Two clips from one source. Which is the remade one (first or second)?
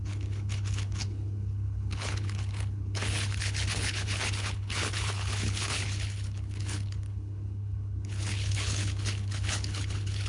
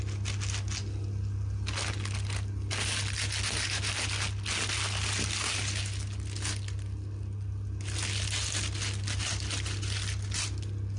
first